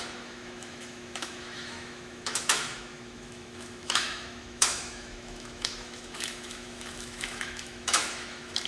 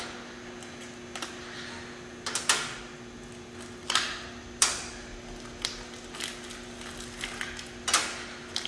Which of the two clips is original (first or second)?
second